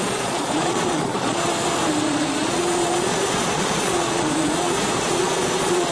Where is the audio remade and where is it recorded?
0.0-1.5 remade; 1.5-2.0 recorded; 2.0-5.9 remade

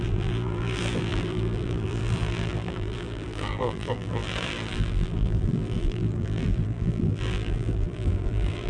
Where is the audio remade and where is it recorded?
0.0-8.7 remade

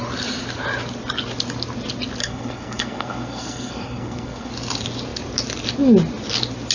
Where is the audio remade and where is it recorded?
0.0-2.2 recorded; 2.2-4.5 remade; 4.5-6.7 recorded

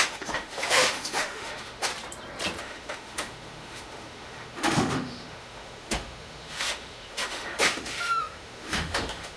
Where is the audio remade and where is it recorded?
0.0-1.9 remade; 1.9-2.6 recorded; 2.6-9.4 remade

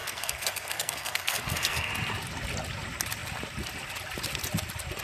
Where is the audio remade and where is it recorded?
0.0-1.9 remade; 1.9-5.0 recorded